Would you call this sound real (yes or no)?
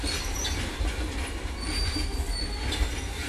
yes